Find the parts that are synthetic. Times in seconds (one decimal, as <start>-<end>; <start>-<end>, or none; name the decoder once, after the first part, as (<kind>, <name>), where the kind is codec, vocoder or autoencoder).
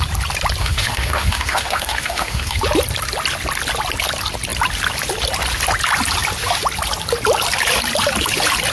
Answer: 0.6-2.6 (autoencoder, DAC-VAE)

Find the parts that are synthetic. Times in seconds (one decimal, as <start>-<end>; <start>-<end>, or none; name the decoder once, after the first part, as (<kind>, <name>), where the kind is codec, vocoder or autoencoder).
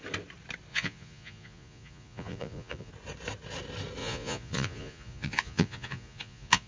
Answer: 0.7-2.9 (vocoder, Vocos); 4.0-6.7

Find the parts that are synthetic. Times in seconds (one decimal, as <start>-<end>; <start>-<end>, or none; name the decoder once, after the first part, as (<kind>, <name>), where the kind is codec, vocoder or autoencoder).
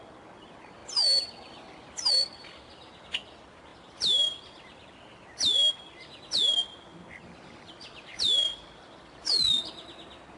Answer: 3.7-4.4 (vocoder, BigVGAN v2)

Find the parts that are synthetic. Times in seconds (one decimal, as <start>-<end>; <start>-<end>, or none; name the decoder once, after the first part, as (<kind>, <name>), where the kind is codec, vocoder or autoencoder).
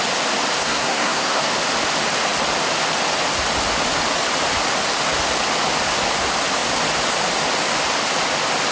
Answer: 0.6-1.4 (codec, SNAC)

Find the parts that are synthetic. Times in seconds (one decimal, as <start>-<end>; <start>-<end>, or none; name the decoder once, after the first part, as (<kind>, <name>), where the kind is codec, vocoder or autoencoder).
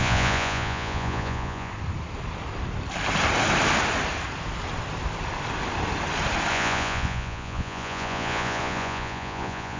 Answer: 0.0-1.7 (vocoder, Vocos); 6.5-9.8